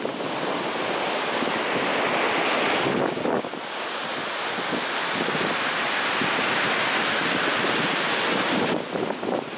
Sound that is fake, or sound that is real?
real